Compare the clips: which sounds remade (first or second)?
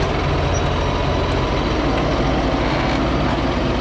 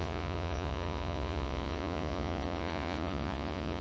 second